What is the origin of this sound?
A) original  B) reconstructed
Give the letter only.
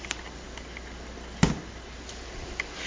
A